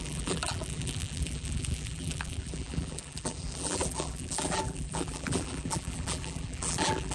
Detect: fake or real fake